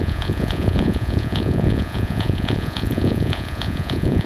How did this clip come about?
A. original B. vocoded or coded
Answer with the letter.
B